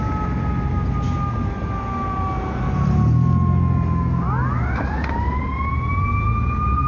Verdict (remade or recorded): recorded